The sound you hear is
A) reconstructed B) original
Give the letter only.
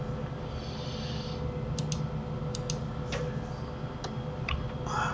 B